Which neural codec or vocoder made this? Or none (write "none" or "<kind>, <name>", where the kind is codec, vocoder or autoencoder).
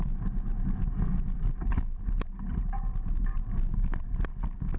none